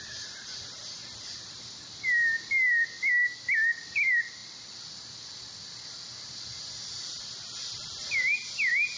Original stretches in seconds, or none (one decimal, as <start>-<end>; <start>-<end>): 0.0-1.0; 1.6-9.0